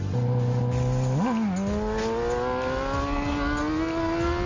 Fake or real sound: real